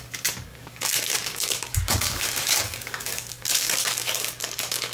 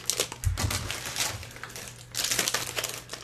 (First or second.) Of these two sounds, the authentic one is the second